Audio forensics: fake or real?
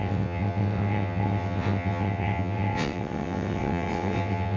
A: fake